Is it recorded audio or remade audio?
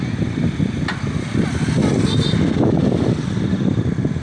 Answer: recorded